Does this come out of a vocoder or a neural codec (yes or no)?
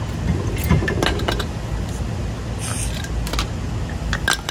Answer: no